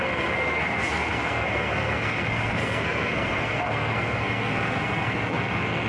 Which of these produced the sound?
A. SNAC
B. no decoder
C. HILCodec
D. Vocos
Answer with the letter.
A